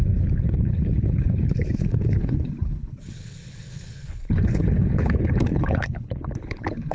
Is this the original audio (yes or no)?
no